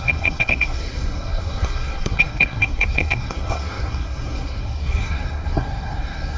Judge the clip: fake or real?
fake